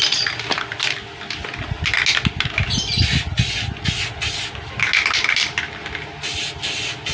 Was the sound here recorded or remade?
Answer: recorded